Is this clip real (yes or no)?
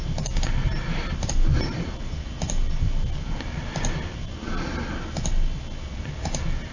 yes